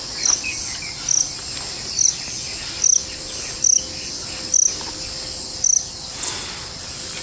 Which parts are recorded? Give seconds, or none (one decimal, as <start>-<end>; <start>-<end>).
0.0-7.2